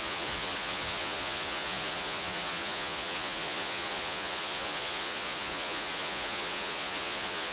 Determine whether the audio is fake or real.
fake